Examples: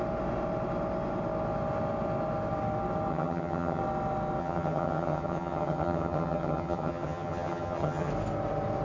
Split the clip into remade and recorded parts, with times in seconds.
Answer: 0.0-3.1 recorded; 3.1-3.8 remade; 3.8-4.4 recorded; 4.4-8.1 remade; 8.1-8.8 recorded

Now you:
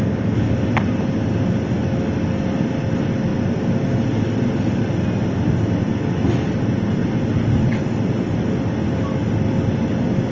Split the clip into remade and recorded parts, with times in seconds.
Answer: 0.0-10.3 recorded

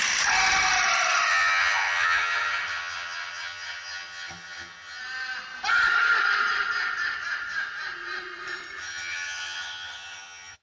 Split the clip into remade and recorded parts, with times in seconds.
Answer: 0.0-1.3 recorded; 1.3-5.0 remade; 5.0-8.8 recorded; 8.8-10.6 remade

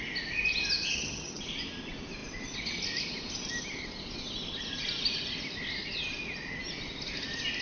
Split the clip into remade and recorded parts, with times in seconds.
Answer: 0.0-0.9 recorded; 0.9-1.4 remade; 1.4-7.6 recorded

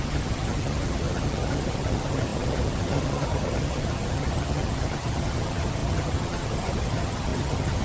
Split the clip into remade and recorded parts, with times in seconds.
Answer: 0.0-7.8 remade

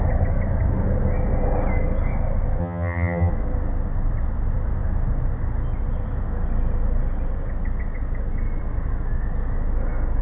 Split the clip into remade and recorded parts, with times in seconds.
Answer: 0.0-2.6 recorded; 2.6-3.3 remade; 3.3-10.2 recorded